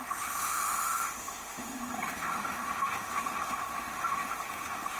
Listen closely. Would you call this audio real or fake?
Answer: fake